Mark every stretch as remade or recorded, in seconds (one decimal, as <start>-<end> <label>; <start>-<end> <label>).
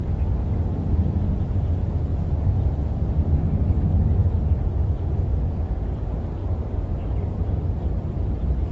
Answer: 0.0-2.1 recorded; 2.1-2.8 remade; 2.8-6.4 recorded; 6.4-8.7 remade